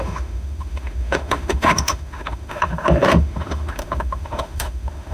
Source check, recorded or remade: remade